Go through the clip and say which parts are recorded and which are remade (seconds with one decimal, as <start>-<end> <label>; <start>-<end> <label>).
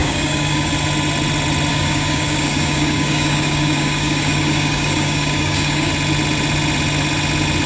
0.0-0.7 remade; 0.7-1.7 recorded; 1.7-5.9 remade; 5.9-7.7 recorded